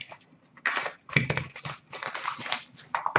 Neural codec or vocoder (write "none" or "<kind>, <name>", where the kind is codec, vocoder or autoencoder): none